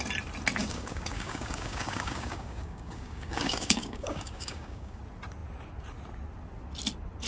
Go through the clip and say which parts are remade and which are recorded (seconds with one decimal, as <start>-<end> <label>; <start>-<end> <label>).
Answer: 0.0-0.6 recorded; 0.6-5.0 remade; 5.0-7.3 recorded